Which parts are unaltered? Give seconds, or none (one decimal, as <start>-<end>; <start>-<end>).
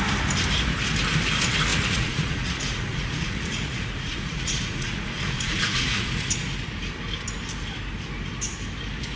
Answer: 0.0-1.7; 6.2-9.2